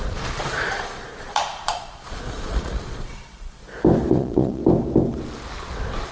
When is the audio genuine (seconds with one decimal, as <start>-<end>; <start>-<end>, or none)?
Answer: 3.6-4.1; 4.6-6.1

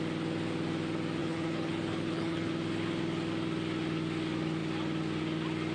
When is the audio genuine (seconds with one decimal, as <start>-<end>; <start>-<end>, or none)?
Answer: 0.0-1.2; 2.5-5.7

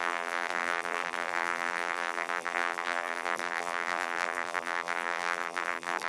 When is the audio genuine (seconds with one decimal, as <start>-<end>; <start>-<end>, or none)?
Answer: none

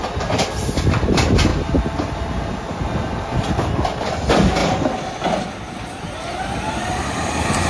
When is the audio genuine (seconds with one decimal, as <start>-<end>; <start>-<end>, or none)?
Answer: 0.0-7.7

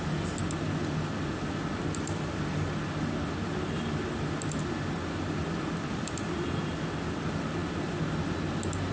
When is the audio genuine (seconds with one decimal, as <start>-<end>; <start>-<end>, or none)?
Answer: 0.0-8.9

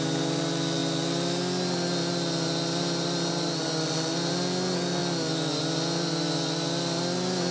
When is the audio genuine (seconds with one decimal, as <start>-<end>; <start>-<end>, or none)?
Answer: 0.0-7.5

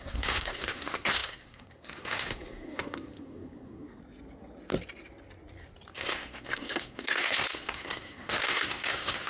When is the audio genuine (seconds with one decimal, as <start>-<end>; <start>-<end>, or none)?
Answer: 4.0-5.9

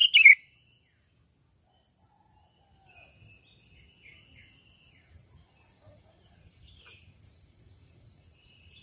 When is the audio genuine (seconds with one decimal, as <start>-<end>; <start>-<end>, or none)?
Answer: 0.0-4.9